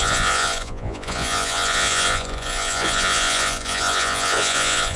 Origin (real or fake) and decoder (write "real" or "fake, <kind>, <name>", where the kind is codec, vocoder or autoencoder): fake, vocoder, Vocos